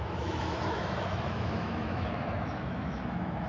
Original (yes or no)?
no